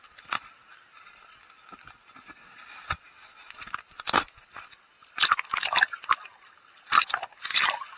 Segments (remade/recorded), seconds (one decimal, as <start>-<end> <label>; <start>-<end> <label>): 0.0-0.6 recorded; 0.6-5.4 remade; 5.4-8.0 recorded